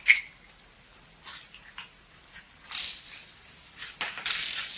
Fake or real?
real